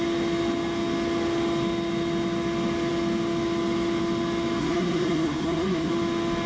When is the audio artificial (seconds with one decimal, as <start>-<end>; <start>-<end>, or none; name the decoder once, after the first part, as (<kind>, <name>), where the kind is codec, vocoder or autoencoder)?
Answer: 4.6-5.9 (codec, SNAC)